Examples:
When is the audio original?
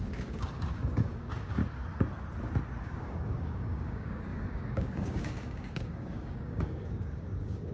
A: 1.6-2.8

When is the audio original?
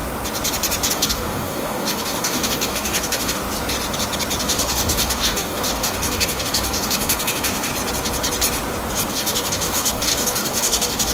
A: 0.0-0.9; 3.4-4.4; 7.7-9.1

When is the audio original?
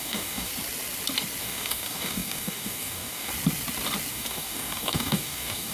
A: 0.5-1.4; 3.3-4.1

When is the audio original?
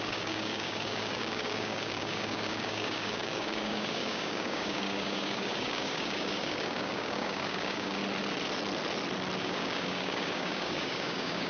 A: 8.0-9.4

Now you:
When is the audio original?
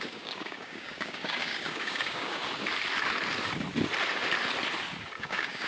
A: 2.4-5.2